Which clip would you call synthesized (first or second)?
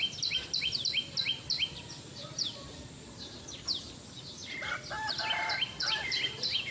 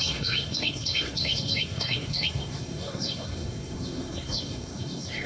second